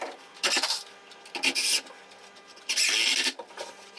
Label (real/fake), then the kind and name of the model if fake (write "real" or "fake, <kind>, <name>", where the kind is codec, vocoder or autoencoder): real